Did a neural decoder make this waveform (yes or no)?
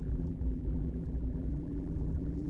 yes